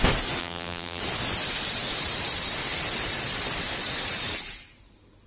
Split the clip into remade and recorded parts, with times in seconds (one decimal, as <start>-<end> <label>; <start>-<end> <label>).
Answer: 0.0-0.4 recorded; 0.4-1.0 remade; 1.0-5.3 recorded

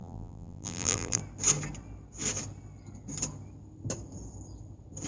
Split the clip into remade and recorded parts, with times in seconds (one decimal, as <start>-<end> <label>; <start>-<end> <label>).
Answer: 0.0-1.2 remade; 1.2-5.1 recorded

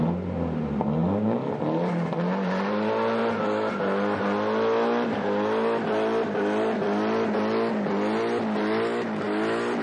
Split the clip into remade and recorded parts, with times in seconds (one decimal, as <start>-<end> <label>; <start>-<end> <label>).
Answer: 0.0-9.8 recorded

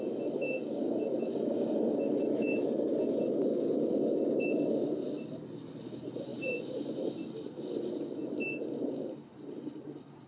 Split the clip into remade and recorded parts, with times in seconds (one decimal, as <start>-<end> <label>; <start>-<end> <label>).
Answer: 0.0-6.3 recorded; 6.3-6.9 remade; 6.9-10.3 recorded

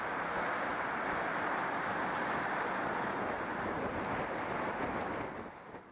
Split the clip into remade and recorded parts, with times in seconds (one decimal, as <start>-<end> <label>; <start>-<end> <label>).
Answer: 0.0-0.7 recorded; 0.7-2.7 remade; 2.7-3.5 recorded; 3.5-4.0 remade; 4.0-5.9 recorded

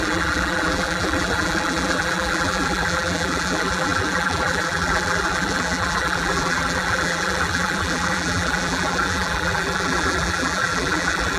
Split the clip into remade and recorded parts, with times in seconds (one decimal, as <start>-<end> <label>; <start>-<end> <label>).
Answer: 0.0-11.4 remade